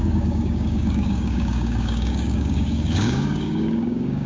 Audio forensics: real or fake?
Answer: fake